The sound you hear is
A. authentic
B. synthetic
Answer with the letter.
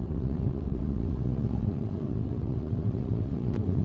B